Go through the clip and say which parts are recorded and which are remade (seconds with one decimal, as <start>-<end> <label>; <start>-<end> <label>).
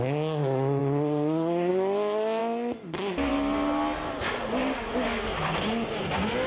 0.0-6.5 recorded